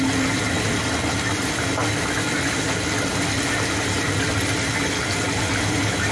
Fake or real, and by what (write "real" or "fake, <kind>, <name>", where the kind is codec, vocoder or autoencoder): real